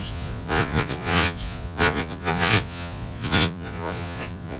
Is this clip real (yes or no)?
no